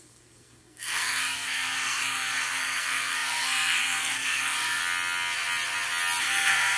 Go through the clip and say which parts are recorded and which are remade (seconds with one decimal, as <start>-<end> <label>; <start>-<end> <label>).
0.0-4.8 remade; 4.8-6.2 recorded; 6.2-6.8 remade